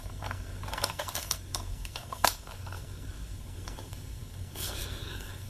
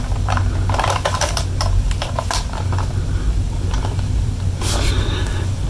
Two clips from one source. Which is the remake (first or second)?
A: first